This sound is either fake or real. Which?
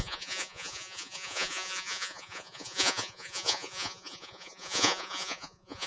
fake